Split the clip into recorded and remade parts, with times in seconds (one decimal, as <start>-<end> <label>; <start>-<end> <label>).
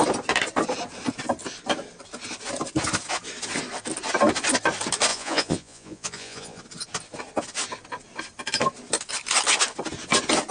0.0-5.1 recorded; 5.1-6.6 remade; 6.6-10.5 recorded